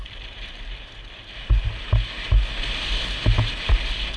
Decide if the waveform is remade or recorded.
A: recorded